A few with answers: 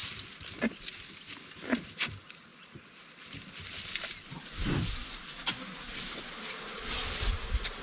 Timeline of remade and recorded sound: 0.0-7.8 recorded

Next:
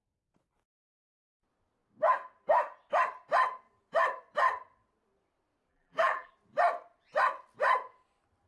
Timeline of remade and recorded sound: 0.0-5.7 recorded; 5.7-6.3 remade; 6.3-8.5 recorded

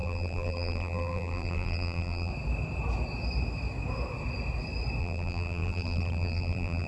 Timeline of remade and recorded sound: 0.0-2.3 remade; 2.3-5.0 recorded; 5.0-6.9 remade